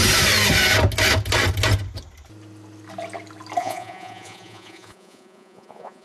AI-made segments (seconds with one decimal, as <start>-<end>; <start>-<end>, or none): 3.6-6.0